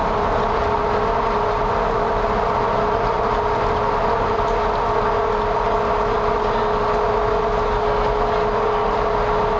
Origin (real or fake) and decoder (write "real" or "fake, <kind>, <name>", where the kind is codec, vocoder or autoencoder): real